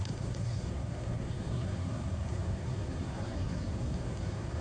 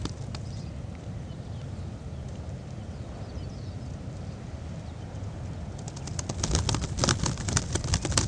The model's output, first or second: first